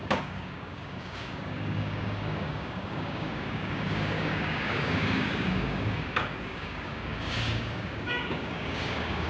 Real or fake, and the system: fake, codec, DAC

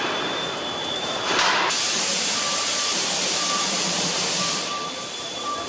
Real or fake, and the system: fake, vocoder, BigVGAN v2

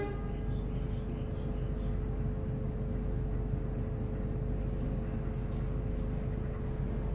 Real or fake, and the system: real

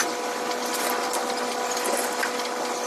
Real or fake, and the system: real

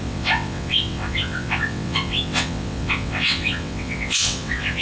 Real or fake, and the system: fake, vocoder, WaveNeXt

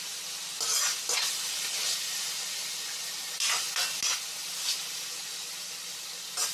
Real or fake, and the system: real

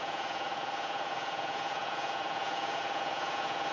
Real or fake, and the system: fake, vocoder, Vocos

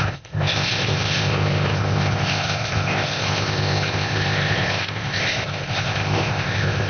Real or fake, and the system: fake, codec, ZipCodec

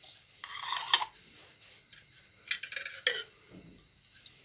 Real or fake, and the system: real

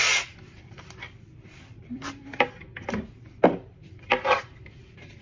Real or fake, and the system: fake, vocoder, BigVGAN v2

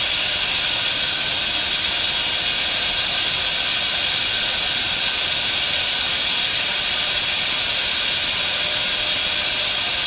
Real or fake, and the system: real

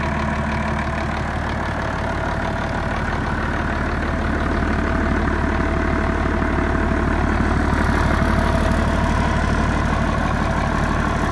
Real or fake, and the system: real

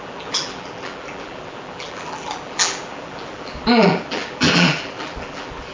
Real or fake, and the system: fake, vocoder, BigVGAN v2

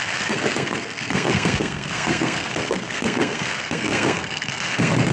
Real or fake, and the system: fake, codec, SNAC